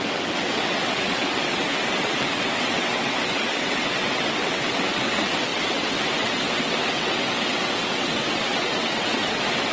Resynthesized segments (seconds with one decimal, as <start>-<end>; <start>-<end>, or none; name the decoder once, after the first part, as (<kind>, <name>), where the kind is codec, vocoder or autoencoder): 0.0-9.7 (vocoder, WaveNeXt)